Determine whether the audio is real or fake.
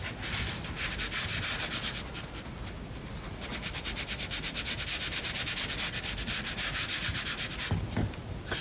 real